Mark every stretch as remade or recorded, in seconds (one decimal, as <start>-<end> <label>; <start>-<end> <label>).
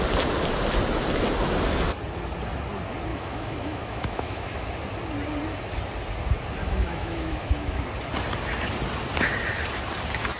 0.0-3.1 recorded; 3.1-4.7 remade; 4.7-6.6 recorded; 6.6-7.8 remade; 7.8-10.4 recorded